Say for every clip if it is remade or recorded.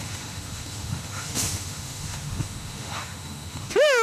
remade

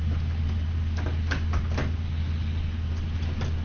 recorded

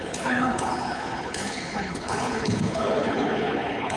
remade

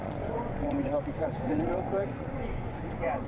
remade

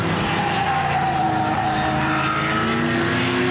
recorded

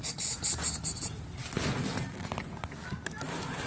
recorded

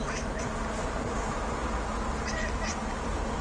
recorded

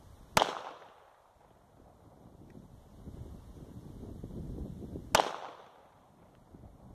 recorded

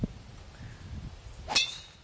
recorded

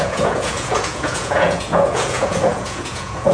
remade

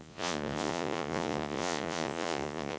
remade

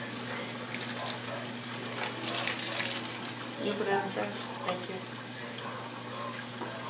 recorded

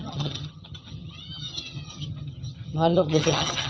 remade